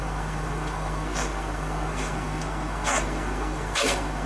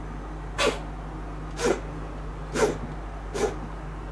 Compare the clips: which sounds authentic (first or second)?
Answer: second